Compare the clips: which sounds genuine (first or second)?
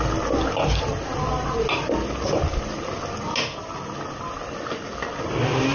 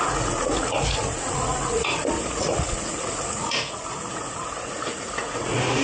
first